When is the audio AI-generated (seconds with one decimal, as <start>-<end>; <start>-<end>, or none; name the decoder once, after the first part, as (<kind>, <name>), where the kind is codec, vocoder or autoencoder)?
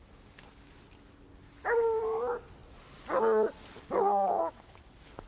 none